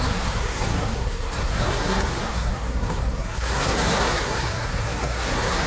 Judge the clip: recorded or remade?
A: remade